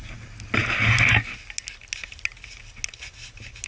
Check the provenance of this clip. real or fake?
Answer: real